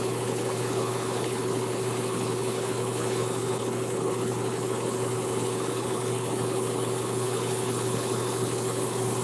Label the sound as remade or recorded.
remade